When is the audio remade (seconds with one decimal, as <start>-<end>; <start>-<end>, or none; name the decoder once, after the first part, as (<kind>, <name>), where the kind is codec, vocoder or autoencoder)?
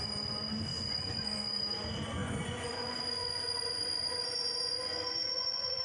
0.7-1.6 (vocoder, Vocos); 2.2-5.8